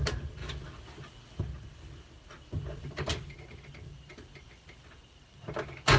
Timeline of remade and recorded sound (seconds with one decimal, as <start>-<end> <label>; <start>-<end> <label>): 0.0-3.1 recorded; 3.1-3.7 remade; 3.7-6.0 recorded